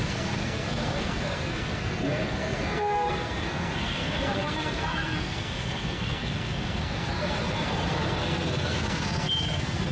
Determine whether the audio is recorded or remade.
remade